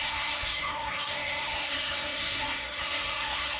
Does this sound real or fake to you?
fake